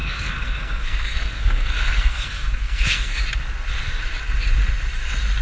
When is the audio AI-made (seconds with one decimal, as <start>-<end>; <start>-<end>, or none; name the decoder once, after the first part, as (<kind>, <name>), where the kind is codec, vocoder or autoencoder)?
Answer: 0.0-3.2 (codec, SNAC)